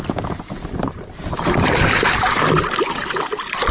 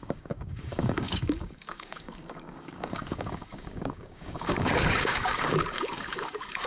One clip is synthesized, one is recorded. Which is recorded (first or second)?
first